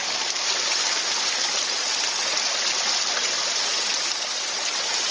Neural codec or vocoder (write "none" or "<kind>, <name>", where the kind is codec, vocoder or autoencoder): none